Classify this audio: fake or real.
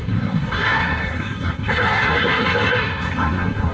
fake